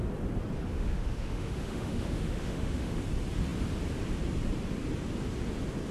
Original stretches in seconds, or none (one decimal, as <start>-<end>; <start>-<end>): 0.0-0.7; 3.0-5.9